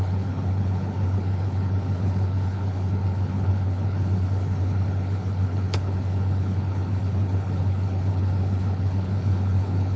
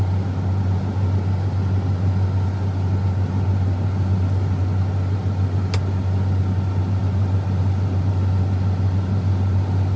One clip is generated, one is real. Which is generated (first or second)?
first